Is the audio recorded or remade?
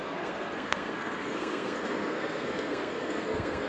remade